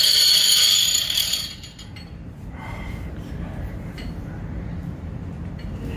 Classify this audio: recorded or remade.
remade